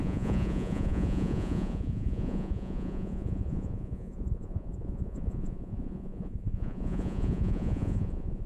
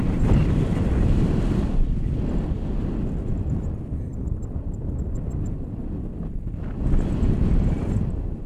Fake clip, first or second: first